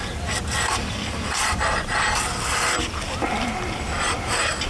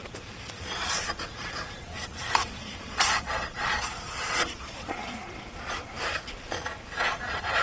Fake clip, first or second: second